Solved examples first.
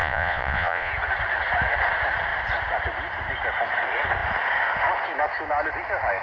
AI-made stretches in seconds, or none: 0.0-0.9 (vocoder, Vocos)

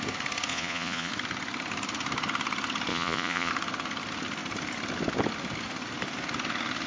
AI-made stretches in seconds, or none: 0.5-1.1 (vocoder, Vocos); 2.9-3.5

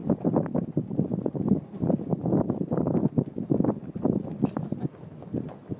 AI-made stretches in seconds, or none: none

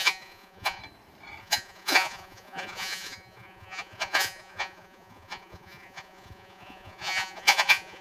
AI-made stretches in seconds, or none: 0.0-0.8 (vocoder, Vocos); 1.4-8.0

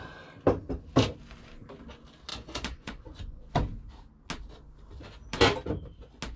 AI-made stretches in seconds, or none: 2.3-3.5 (vocoder, Vocos)

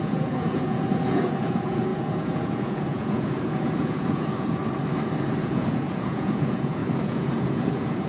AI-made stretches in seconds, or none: 0.0-4.6 (vocoder, Vocos); 5.4-8.1